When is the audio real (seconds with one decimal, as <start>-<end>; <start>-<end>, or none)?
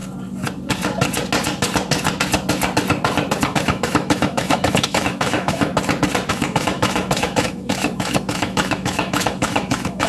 0.0-3.4; 5.7-6.3